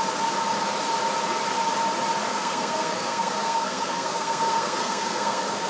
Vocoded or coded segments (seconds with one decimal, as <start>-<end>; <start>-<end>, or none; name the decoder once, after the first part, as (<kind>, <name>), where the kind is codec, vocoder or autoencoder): 2.3-5.7 (codec, SNAC)